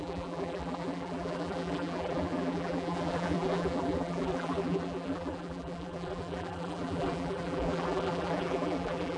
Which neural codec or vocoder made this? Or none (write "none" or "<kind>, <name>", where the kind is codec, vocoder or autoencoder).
vocoder, BigVGAN v2